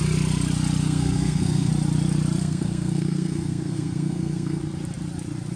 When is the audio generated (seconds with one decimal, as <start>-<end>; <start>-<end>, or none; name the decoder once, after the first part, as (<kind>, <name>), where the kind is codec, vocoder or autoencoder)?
0.8-1.7 (codec, SNAC); 2.4-4.6